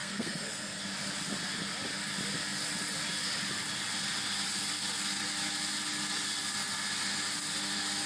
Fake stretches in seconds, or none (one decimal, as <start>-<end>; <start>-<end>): 0.0-0.8